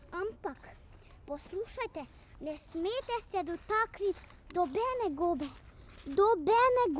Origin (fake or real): real